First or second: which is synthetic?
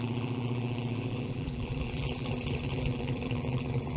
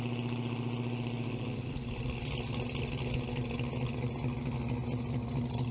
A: first